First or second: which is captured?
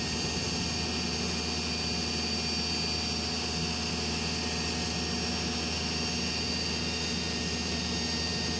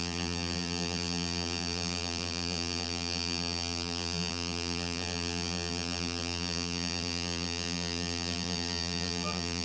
first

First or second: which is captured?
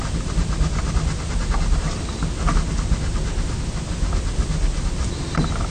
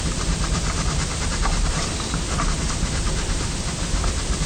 first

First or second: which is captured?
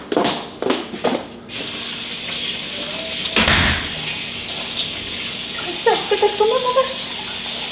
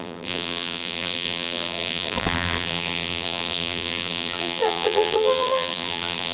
first